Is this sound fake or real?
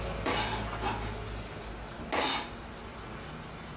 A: real